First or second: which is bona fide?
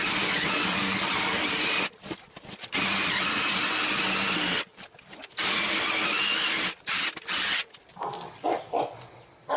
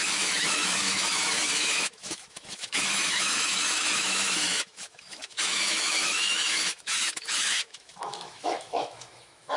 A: first